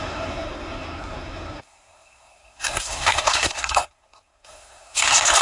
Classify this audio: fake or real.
fake